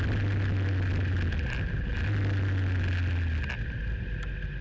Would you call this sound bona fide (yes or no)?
yes